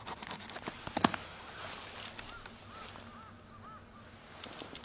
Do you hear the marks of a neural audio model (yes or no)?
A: no